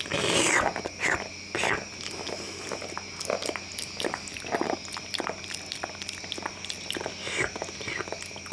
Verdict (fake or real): real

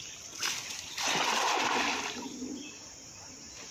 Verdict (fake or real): real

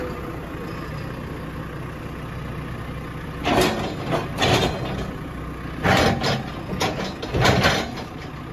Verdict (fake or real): real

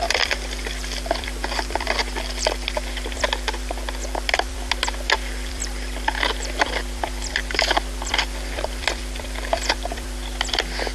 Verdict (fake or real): fake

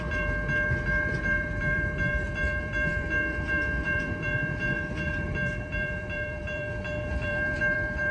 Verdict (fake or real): fake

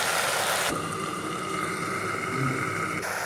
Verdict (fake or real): real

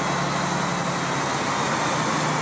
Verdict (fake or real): real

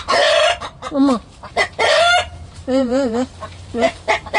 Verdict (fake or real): fake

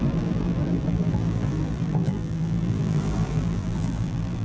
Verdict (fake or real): fake